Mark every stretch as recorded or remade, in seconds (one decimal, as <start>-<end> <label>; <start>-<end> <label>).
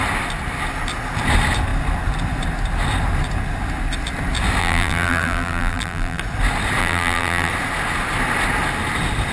0.0-4.6 recorded; 4.6-6.2 remade; 6.2-6.8 recorded; 6.8-7.5 remade; 7.5-9.3 recorded